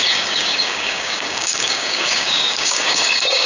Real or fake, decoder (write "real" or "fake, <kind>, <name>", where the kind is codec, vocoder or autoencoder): fake, codec, DAC